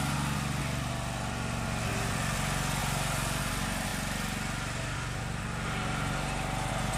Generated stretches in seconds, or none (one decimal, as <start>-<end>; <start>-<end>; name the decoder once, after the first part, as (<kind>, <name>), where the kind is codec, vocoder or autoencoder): none